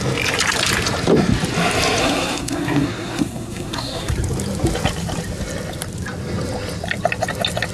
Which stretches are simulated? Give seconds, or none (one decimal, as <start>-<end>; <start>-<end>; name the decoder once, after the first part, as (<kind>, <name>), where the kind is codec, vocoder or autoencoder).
2.0-4.1 (codec, SNAC)

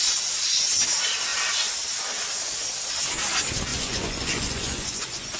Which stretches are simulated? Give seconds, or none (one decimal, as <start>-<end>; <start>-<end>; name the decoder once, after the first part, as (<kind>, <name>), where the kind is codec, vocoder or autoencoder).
3.7-5.4 (vocoder, Vocos)